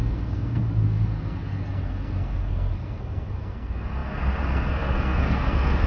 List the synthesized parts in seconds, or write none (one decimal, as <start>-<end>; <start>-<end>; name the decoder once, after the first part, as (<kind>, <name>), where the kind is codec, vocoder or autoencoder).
0.0-5.9 (codec, SNAC)